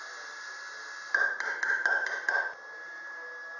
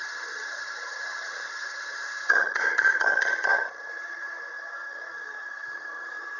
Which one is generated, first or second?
second